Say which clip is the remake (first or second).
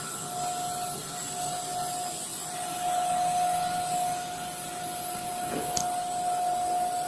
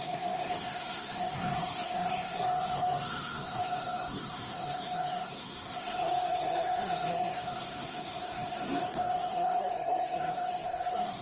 second